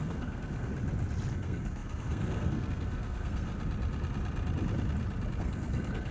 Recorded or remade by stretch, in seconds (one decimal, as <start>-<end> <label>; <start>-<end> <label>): 0.0-0.7 remade; 0.7-1.3 recorded; 1.3-3.5 remade; 3.5-5.4 recorded; 5.4-6.1 remade